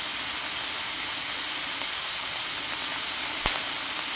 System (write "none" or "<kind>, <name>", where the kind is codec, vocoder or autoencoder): none